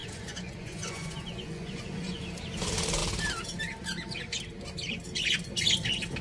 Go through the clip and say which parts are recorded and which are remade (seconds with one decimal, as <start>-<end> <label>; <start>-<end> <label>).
0.0-2.2 remade; 2.2-6.2 recorded